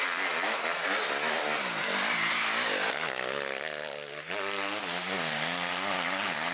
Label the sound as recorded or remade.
recorded